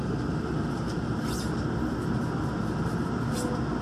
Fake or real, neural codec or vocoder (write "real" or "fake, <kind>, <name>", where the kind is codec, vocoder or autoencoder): real